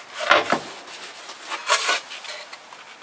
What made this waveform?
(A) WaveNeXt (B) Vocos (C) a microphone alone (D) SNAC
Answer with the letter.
C